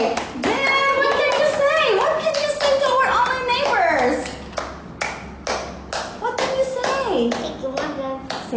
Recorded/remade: recorded